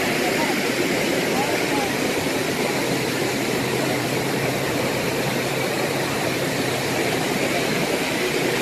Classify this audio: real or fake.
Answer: fake